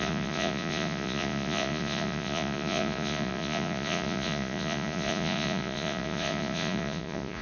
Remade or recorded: remade